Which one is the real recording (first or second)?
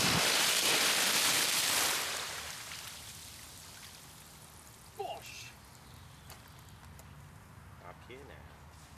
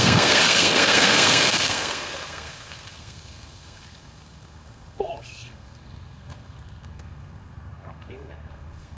first